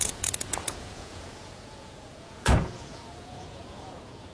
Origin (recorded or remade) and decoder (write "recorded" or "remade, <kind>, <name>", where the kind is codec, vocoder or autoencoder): remade, vocoder, Vocos